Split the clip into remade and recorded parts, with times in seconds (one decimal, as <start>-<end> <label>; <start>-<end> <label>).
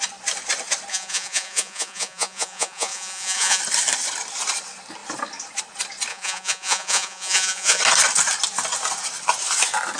0.0-0.9 recorded; 0.9-3.6 remade; 3.6-6.1 recorded; 6.1-7.8 remade; 7.8-10.0 recorded